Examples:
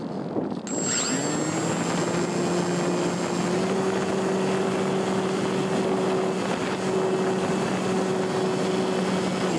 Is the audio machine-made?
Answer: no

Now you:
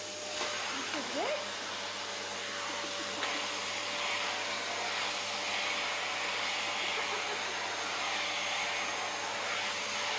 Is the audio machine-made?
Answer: no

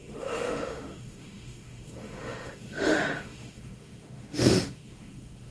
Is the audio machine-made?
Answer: yes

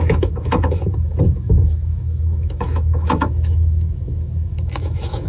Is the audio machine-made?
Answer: yes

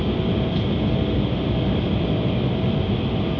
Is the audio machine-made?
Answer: no